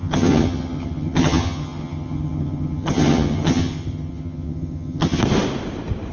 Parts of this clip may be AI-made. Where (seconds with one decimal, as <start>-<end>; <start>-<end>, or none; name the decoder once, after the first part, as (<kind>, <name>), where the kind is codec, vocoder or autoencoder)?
0.0-5.2 (vocoder, HiFi-GAN)